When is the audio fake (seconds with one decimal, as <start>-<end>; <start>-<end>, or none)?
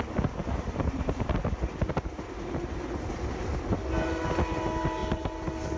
0.4-1.4